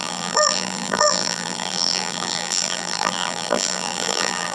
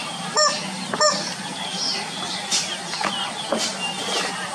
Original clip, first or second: second